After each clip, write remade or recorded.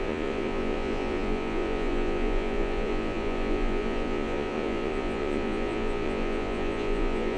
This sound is remade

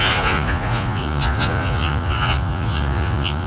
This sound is remade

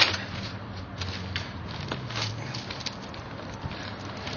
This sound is recorded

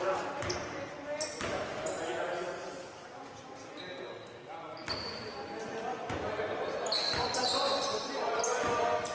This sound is recorded